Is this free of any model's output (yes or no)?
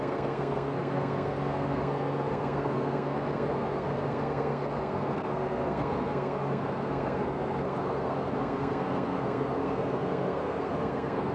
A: no